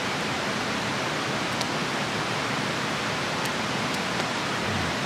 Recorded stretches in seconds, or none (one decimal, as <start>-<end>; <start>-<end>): 0.0-5.1